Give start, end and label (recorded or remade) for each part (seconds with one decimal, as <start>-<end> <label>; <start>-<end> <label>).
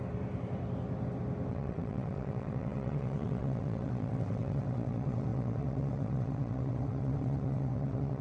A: 0.0-1.5 recorded; 1.5-8.2 remade